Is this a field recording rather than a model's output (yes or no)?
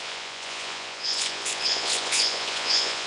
no